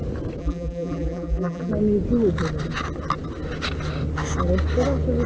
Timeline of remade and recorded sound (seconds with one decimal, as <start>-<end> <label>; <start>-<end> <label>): 0.0-0.4 recorded; 0.4-1.7 remade; 1.7-5.3 recorded